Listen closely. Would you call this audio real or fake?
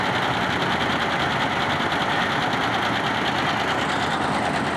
real